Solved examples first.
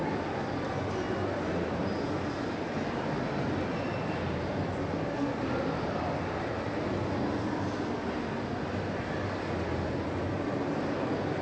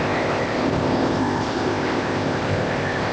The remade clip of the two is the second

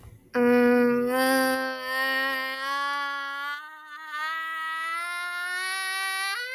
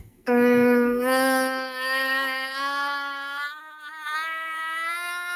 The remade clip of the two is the second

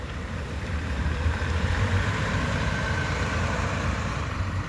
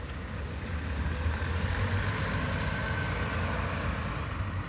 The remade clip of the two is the first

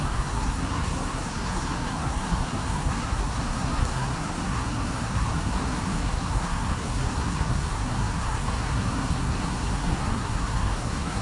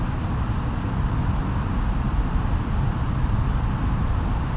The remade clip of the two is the first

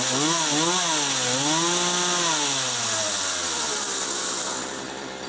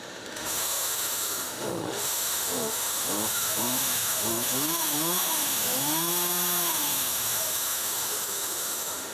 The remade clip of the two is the second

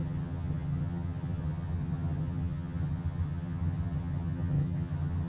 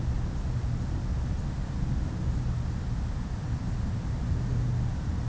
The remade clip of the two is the first